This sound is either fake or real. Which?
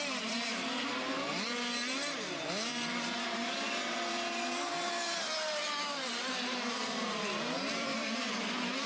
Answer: fake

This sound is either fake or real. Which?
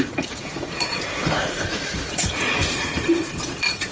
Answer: fake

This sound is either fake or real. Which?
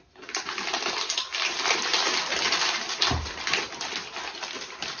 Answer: real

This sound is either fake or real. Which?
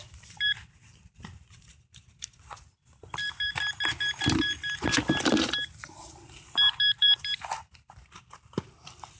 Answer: fake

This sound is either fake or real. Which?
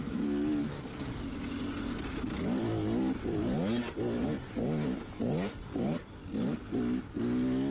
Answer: real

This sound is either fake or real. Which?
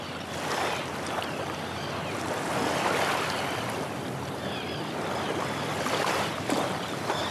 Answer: real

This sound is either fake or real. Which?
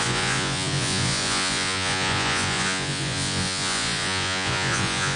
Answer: fake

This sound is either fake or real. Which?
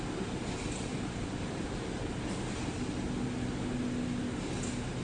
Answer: real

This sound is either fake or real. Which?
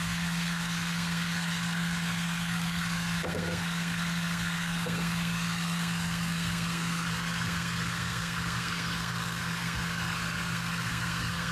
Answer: fake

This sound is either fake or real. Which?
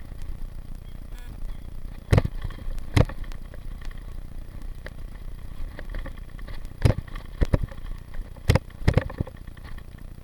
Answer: real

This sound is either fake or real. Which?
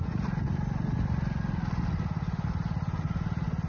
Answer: real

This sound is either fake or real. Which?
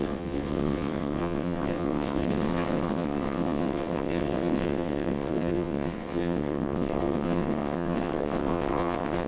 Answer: fake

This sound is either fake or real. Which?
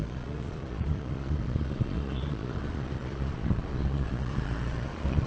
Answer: fake